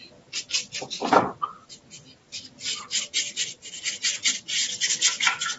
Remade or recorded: recorded